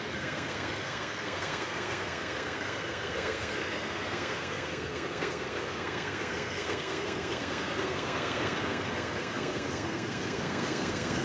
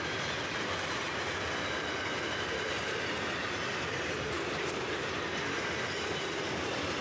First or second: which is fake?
first